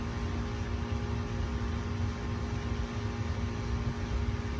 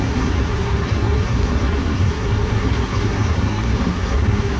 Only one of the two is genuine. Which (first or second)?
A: first